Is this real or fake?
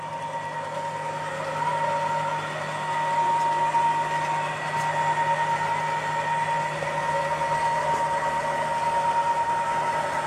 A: real